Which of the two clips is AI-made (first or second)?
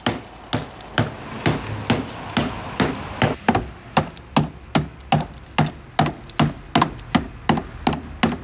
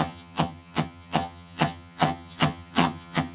second